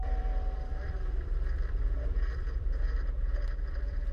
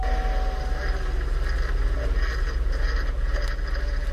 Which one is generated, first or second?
first